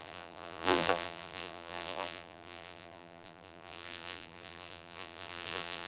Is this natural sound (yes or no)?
no